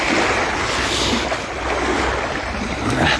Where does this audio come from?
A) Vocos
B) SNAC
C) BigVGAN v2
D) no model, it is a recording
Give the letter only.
D